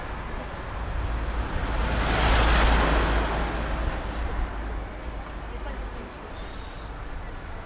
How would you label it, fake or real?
real